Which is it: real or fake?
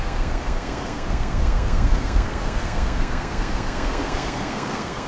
fake